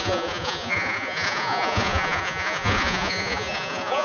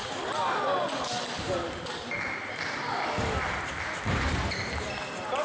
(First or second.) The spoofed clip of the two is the first